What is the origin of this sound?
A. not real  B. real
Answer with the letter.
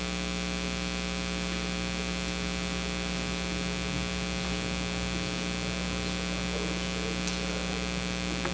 B